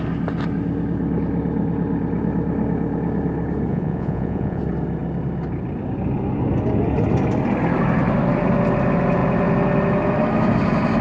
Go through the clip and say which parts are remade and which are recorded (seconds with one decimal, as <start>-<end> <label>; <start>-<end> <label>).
0.0-3.7 recorded; 3.7-4.6 remade; 4.6-11.0 recorded